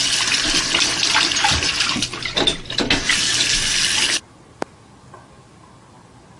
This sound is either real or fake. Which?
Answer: real